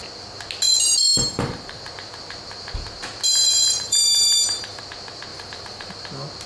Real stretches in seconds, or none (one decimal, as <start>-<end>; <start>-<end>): 0.0-1.1; 1.8-3.4; 4.8-5.3; 5.9-6.5